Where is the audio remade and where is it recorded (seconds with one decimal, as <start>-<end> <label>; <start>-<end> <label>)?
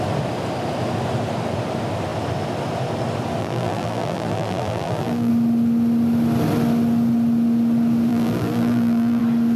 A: 0.0-3.4 recorded; 3.4-5.3 remade; 5.3-8.1 recorded; 8.1-9.2 remade; 9.2-9.6 recorded